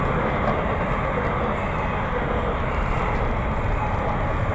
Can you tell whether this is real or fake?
real